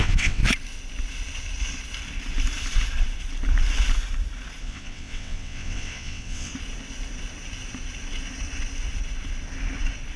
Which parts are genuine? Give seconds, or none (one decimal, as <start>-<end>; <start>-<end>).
0.4-4.6; 6.5-10.2